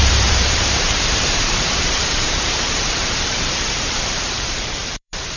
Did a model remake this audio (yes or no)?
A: yes